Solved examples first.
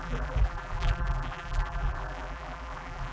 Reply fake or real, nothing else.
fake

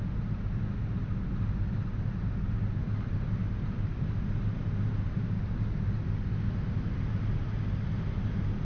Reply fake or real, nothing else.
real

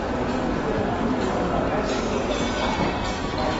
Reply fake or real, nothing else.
real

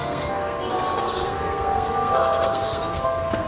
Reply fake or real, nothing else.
fake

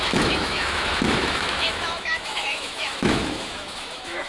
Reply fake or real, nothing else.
fake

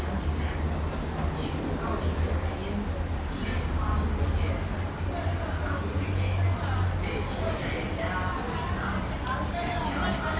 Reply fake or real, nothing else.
real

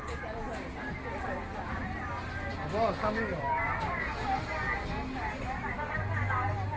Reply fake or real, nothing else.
real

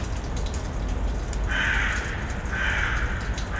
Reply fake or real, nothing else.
real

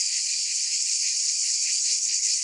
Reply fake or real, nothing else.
fake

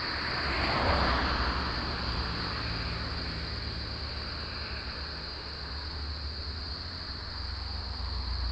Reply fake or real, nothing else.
real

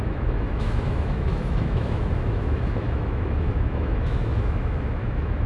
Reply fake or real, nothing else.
fake